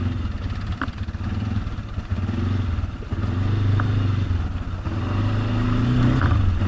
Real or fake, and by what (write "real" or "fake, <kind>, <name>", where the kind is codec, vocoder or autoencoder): real